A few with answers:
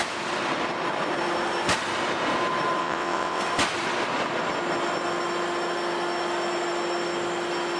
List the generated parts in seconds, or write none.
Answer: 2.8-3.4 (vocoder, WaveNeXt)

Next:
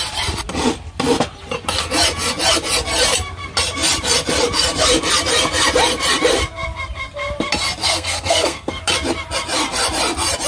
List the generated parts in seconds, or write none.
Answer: 7.8-8.8 (codec, SNAC)

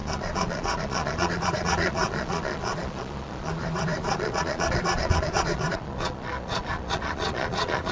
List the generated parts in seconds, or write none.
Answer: 0.0-7.9 (vocoder, Vocos)

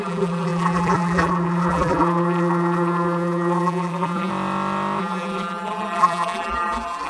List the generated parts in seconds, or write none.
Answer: 0.0-4.3 (vocoder, BigVGAN v2); 5.0-7.1